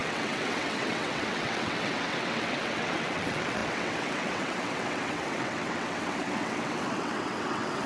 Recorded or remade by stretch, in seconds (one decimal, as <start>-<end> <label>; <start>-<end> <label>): 0.0-7.9 remade